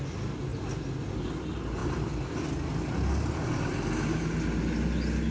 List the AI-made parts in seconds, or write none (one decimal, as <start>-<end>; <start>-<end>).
none